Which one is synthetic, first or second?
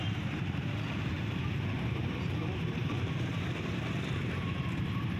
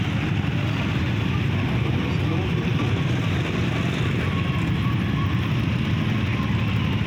first